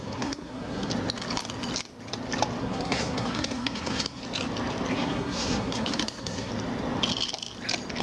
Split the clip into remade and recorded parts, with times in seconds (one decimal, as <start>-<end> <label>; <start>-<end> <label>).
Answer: 0.0-0.9 remade; 0.9-2.6 recorded; 2.6-4.2 remade; 4.2-4.9 recorded; 4.9-6.5 remade; 6.5-8.0 recorded